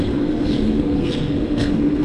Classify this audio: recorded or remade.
remade